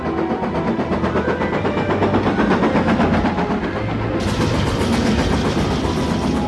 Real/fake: real